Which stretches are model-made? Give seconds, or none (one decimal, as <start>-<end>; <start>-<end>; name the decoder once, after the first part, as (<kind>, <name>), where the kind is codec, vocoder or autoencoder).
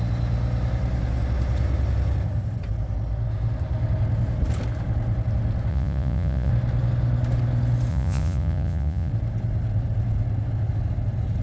5.7-6.5 (vocoder, Vocos); 7.9-9.1